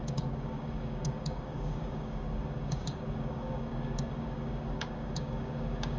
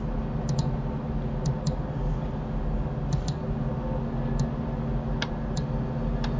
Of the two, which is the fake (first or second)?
first